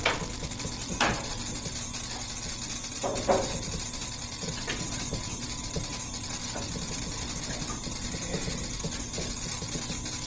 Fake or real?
real